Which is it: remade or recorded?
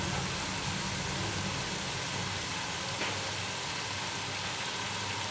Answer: recorded